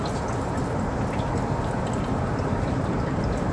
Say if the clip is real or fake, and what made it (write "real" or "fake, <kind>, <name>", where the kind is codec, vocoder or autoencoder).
real